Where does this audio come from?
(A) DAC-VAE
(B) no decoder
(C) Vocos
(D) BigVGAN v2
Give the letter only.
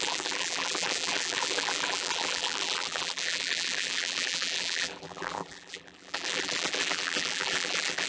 D